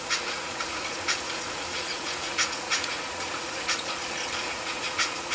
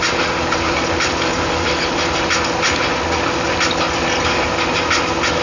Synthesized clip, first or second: first